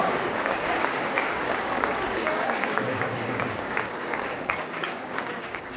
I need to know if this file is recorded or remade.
remade